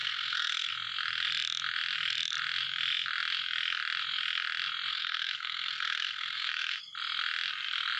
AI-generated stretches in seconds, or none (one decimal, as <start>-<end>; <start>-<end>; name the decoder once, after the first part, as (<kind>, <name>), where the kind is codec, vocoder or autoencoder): 0.0-0.7 (codec, SNAC); 4.9-6.8